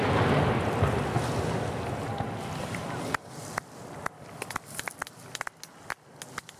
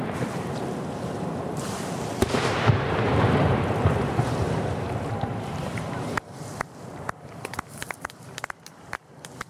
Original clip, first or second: first